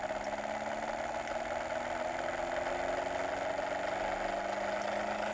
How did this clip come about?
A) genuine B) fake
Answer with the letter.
A